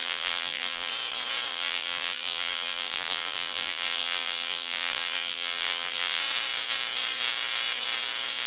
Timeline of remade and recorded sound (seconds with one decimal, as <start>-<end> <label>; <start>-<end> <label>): 0.0-0.9 remade; 0.9-1.5 recorded; 1.5-6.2 remade; 6.2-8.5 recorded